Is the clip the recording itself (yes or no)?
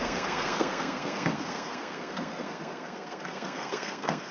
no